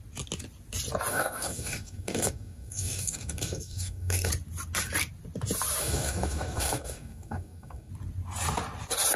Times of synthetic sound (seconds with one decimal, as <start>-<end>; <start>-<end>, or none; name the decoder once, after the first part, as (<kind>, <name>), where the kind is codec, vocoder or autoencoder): 1.1-4.3 (codec, DAC); 5.8-7.9